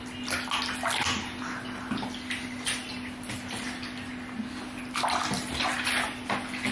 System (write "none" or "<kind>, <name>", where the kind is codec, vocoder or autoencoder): none